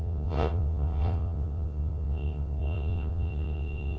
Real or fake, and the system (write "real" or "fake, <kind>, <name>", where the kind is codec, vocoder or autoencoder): fake, vocoder, WaveNeXt